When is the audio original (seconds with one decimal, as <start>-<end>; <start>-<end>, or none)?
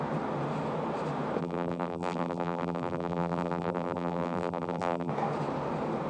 0.0-1.4; 5.1-6.1